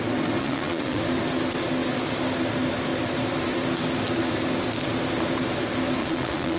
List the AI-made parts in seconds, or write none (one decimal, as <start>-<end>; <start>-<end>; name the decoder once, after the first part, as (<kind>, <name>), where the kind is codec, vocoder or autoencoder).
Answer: 0.4-1.0 (vocoder, WaveNeXt); 6.0-6.6